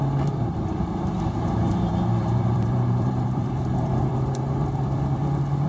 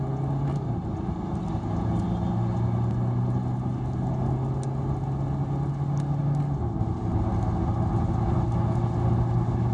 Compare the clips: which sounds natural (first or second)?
second